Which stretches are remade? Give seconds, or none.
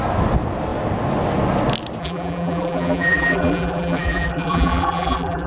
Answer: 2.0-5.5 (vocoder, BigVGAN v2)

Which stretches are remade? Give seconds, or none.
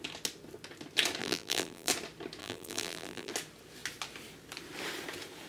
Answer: 1.2-1.9 (vocoder, BigVGAN v2); 2.4-3.3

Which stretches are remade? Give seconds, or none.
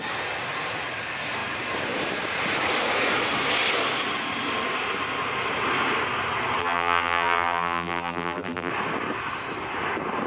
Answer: 6.6-8.7 (vocoder, BigVGAN v2)